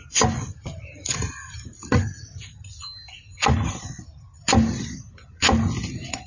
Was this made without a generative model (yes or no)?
yes